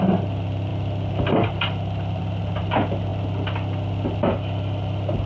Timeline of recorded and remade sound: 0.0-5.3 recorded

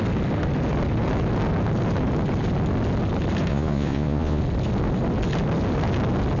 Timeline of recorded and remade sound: 0.0-3.5 recorded; 3.5-4.4 remade; 4.4-6.4 recorded

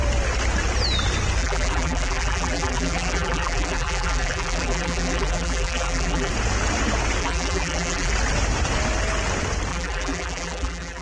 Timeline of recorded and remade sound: 0.0-1.4 recorded; 1.4-6.3 remade; 6.3-7.2 recorded; 7.2-8.1 remade; 8.1-9.7 recorded; 9.7-11.0 remade